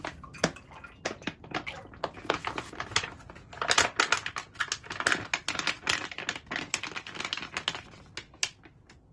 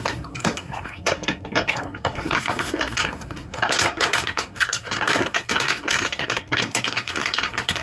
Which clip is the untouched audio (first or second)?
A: first